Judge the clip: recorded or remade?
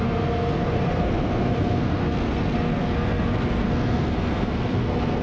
remade